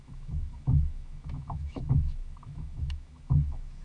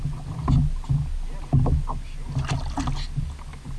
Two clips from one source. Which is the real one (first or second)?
second